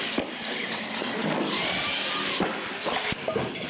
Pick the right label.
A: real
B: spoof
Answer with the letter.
A